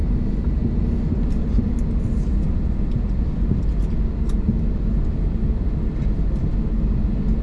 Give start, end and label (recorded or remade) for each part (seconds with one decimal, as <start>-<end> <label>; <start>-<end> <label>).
0.0-7.4 recorded